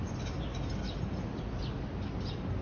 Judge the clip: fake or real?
real